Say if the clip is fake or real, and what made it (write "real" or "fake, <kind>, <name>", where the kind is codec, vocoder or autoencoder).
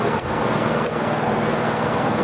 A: fake, codec, SNAC